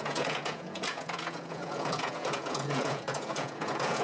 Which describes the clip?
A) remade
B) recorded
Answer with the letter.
A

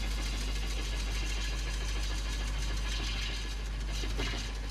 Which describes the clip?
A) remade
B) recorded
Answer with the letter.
B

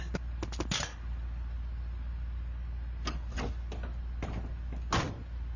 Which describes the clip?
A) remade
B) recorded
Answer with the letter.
B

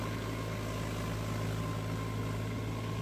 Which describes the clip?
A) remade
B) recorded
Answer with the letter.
B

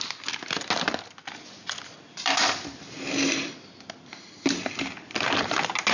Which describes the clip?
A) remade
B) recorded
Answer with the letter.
B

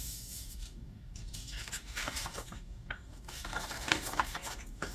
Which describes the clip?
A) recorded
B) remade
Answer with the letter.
B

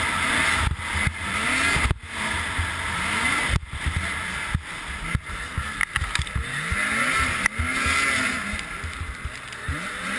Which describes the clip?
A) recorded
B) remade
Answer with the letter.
A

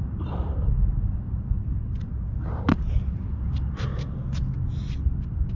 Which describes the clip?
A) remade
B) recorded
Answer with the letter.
B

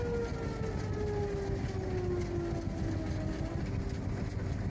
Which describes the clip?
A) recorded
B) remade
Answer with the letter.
A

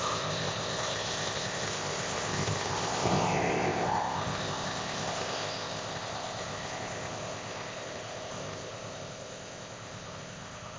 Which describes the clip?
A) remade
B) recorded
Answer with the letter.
A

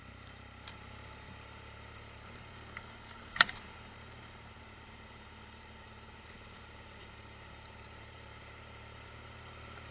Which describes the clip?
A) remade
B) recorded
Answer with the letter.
A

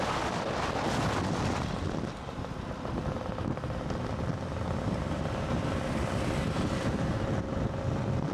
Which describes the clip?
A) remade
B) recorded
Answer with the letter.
B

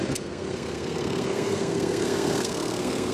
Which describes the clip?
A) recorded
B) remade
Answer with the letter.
B